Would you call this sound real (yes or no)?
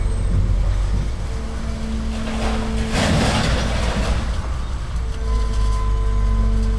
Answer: yes